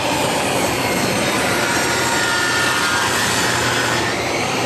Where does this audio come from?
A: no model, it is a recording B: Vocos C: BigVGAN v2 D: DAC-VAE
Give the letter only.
C